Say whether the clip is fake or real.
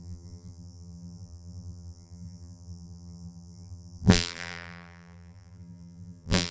fake